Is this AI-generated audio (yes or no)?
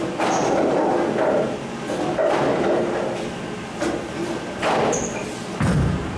no